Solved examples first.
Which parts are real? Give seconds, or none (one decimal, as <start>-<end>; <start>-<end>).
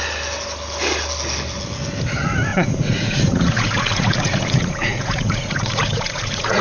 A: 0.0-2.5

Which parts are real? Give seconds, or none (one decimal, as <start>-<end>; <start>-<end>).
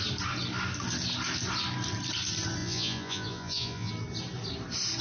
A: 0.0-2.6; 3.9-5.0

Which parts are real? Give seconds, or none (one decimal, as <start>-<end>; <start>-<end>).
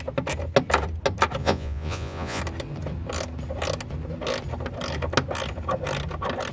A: 0.0-1.4; 2.4-6.5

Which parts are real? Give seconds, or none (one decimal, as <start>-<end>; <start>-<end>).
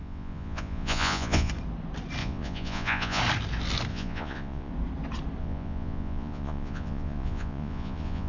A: 1.5-2.2; 3.2-3.9; 4.7-5.4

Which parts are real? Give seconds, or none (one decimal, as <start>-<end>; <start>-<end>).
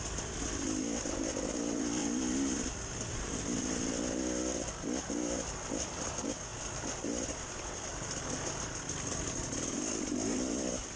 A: 0.0-11.0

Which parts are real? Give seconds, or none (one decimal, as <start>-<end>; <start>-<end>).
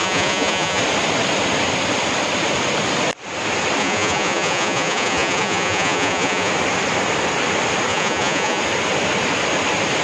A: 0.8-3.8; 6.5-7.9; 8.6-10.0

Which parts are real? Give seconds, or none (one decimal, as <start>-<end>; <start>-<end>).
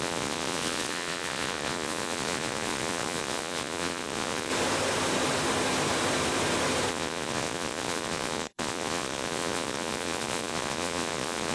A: 4.5-6.9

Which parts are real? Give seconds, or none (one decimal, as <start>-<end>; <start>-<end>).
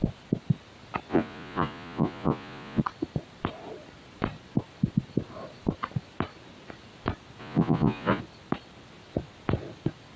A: 0.0-1.1; 2.8-7.4; 8.2-10.2